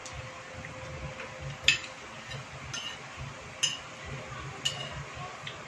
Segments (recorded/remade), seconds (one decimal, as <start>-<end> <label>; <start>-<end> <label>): 0.0-5.7 recorded